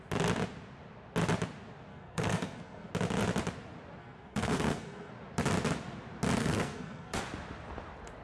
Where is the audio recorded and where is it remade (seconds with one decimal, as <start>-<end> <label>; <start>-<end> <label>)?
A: 0.0-1.9 recorded; 1.9-2.9 remade; 2.9-4.0 recorded; 4.0-5.1 remade; 5.1-6.4 recorded; 6.4-7.2 remade; 7.2-8.2 recorded